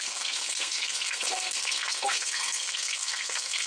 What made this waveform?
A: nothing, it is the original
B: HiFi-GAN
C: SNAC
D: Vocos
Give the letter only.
C